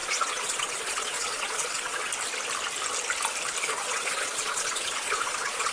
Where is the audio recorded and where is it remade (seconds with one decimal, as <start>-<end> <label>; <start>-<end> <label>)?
0.0-2.1 remade; 2.1-3.6 recorded; 3.6-5.7 remade

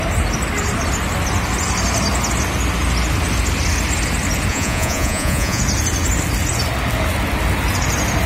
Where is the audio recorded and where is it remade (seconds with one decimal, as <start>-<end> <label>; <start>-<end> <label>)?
0.0-4.5 recorded; 4.5-5.6 remade; 5.6-8.3 recorded

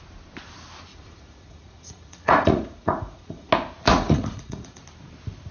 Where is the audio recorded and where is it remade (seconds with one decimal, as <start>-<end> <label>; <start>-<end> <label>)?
0.0-0.9 recorded; 0.9-3.5 remade; 3.5-3.9 recorded; 3.9-4.8 remade; 4.8-5.5 recorded

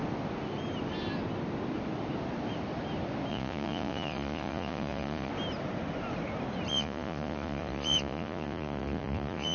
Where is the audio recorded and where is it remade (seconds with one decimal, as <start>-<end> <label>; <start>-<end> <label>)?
0.0-3.3 recorded; 3.3-5.3 remade; 5.3-6.7 recorded; 6.7-9.5 remade